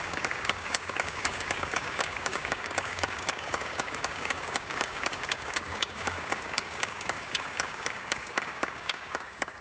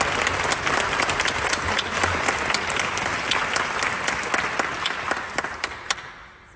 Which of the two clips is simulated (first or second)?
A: first